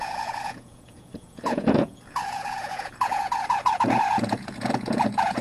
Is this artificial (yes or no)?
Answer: yes